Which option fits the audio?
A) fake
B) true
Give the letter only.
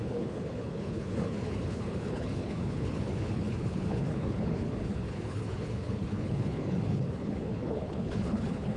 A